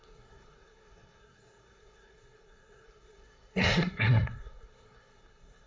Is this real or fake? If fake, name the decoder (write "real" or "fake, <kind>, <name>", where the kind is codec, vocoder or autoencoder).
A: fake, codec, SNAC